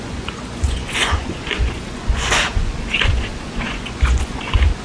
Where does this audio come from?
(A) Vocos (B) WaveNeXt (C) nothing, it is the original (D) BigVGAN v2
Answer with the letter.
A